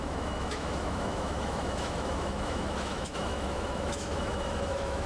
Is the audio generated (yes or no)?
yes